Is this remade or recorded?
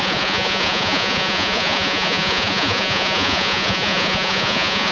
remade